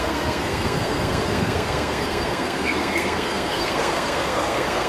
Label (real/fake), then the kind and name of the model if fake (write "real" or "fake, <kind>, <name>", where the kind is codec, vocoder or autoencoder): fake, codec, SNAC